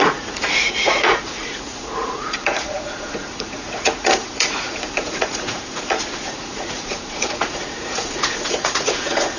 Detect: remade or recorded remade